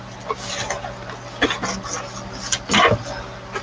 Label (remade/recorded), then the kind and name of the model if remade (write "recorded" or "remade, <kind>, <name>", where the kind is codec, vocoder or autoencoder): recorded